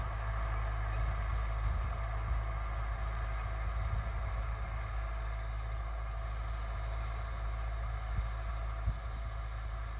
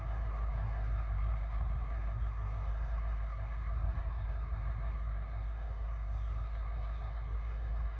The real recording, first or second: first